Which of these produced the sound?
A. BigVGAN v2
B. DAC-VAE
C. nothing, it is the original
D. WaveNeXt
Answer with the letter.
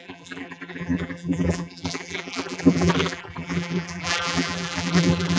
A